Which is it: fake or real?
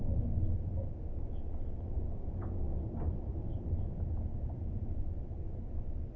real